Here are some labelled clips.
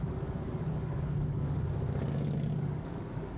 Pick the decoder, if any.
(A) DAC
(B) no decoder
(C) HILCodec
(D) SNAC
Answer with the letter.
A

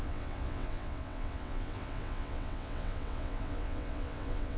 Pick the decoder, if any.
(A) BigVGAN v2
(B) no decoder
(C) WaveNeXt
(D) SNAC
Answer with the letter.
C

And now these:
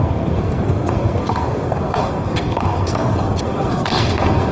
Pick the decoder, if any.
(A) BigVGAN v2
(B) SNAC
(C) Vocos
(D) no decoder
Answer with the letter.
B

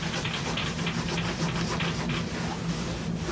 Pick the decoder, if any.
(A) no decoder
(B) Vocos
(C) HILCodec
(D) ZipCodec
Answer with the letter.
A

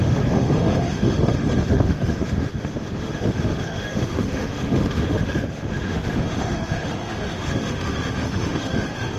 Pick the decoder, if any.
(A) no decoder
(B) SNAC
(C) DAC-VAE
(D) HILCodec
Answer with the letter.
C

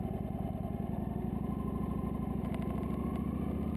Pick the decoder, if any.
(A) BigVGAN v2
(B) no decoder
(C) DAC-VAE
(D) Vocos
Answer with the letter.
B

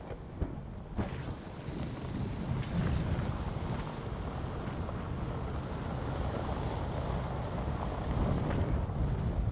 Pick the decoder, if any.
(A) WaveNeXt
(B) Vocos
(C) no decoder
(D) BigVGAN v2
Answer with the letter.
C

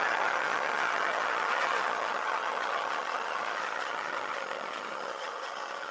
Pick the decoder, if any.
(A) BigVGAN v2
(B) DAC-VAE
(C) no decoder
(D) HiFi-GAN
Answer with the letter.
D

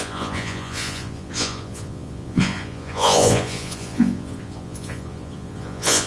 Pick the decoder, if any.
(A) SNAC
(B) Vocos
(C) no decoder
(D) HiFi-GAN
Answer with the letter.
B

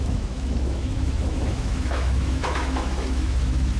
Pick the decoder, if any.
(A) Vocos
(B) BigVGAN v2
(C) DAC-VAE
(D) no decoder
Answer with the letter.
C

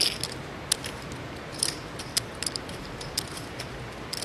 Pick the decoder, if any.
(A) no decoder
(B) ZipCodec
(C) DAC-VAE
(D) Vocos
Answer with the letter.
A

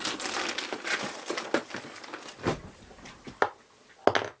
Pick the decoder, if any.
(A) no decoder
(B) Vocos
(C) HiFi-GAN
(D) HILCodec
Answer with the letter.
A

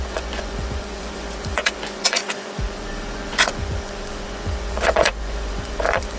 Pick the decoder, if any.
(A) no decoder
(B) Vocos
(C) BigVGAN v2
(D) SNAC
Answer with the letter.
B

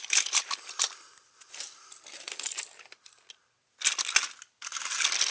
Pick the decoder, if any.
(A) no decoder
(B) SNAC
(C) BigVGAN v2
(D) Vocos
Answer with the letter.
A